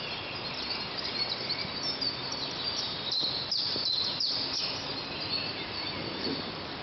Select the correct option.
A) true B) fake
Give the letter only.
A